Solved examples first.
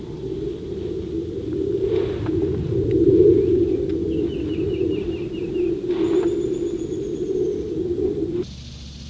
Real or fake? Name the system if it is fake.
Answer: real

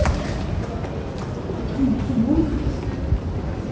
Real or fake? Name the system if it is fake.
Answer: real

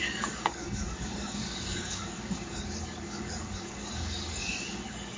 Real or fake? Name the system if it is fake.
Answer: fake, codec, DAC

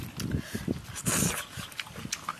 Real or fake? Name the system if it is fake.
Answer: real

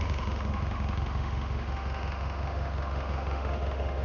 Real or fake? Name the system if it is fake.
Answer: fake, autoencoder, DAC-VAE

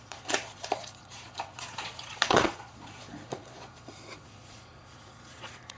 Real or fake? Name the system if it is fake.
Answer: fake, vocoder, Vocos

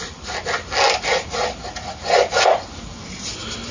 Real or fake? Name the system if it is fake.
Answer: real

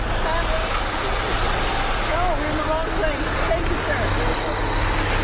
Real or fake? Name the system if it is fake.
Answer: real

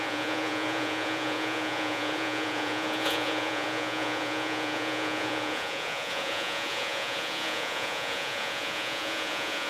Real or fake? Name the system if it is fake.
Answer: fake, vocoder, Vocos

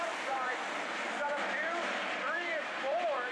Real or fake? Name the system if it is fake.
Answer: fake, vocoder, BigVGAN v2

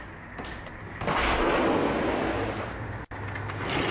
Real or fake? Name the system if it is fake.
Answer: real